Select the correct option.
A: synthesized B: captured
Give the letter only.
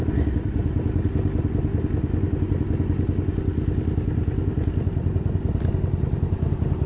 B